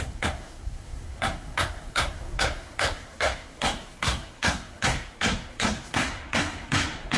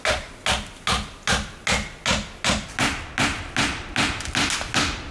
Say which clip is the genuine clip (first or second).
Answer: second